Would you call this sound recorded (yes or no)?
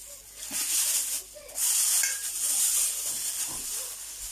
yes